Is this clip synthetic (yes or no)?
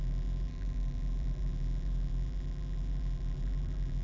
yes